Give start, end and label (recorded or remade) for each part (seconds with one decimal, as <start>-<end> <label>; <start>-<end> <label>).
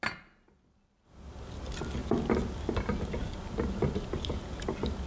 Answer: 0.0-5.1 recorded